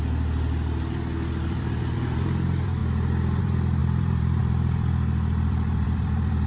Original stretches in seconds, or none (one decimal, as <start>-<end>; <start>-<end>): 0.0-1.3; 2.8-3.4